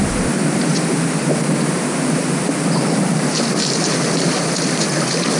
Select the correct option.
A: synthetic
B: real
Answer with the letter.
B